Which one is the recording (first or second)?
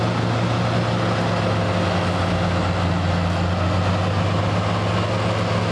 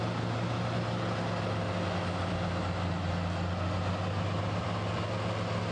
first